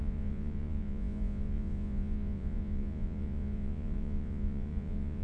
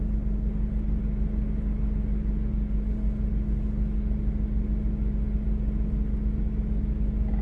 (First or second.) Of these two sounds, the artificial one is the first